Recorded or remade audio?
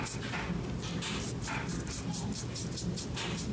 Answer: recorded